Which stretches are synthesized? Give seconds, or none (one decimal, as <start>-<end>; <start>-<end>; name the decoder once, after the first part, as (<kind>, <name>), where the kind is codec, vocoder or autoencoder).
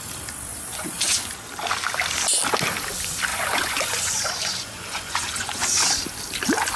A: 0.5-1.3 (vocoder, Vocos); 3.3-5.9